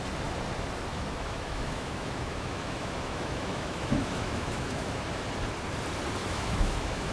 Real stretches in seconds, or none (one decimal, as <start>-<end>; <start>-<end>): 0.0-0.9; 5.2-6.2